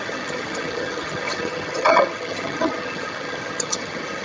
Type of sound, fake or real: fake